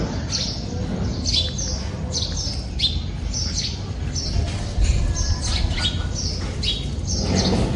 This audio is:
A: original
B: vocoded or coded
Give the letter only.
A